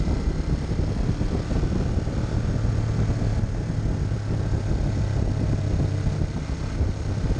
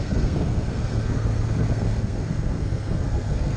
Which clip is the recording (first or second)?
first